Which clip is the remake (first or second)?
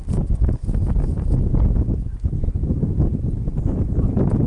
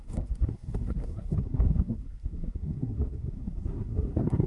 second